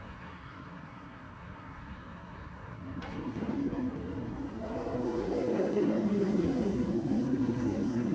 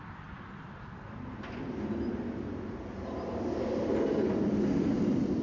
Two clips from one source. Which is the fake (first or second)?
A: first